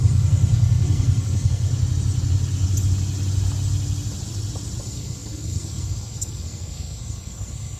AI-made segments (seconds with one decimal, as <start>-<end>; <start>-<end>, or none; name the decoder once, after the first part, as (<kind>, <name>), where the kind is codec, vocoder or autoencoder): 0.0-1.7 (codec, SNAC); 4.8-7.8